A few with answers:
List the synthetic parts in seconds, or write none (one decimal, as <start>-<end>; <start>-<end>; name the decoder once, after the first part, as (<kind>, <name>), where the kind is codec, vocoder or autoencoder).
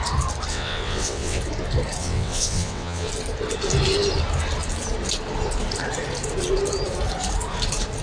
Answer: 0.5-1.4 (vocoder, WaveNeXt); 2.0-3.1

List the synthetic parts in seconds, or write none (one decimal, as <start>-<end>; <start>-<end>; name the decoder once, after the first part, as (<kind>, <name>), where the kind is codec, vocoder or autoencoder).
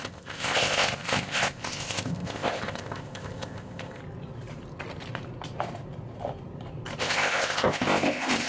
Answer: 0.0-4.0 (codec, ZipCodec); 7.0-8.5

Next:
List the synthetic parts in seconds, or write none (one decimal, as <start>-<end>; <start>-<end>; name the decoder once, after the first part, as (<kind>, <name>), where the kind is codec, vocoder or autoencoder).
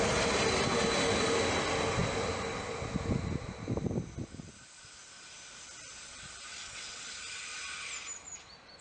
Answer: 6.5-7.1 (vocoder, WaveNeXt)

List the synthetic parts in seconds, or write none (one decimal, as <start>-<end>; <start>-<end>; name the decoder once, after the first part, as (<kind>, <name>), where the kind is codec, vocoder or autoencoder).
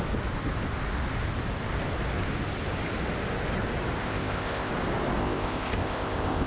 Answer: 4.0-4.7 (codec, ZipCodec); 5.2-6.5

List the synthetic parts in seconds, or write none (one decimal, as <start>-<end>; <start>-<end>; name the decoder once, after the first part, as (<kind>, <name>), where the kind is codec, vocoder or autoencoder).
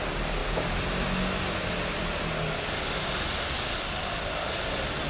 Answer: none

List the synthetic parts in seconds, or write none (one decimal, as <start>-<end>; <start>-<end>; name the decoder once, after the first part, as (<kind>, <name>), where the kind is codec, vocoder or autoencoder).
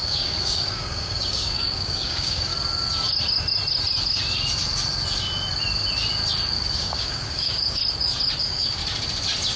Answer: 0.0-2.5 (codec, DAC); 6.8-7.8; 8.4-8.8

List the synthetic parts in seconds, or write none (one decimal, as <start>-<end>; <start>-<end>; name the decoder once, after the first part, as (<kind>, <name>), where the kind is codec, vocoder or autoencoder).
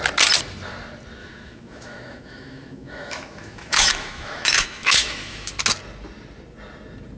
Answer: 1.2-5.5 (autoencoder, DAC-VAE)